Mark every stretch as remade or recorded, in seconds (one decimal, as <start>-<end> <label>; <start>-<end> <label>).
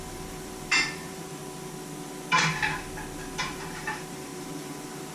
0.0-1.4 remade; 1.4-3.4 recorded; 3.4-5.1 remade